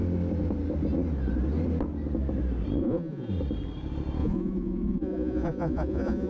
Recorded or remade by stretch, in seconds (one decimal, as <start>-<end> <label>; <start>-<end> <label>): 0.0-2.8 recorded; 2.8-3.3 remade; 3.3-4.2 recorded; 4.2-6.3 remade